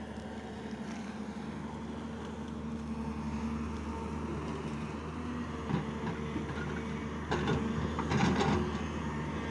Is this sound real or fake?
real